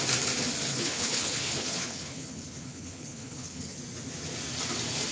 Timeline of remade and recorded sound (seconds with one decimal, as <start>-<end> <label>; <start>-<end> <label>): 0.0-0.7 recorded; 0.7-3.8 remade; 3.8-5.1 recorded